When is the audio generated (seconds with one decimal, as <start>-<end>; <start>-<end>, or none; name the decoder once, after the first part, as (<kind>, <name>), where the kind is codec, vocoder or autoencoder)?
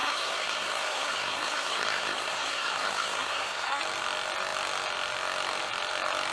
0.0-3.8 (codec, SNAC)